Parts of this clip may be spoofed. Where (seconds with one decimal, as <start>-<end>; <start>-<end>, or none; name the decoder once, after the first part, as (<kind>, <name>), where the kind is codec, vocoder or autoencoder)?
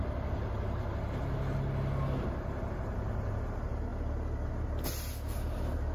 none